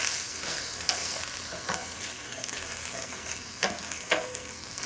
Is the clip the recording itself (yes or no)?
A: no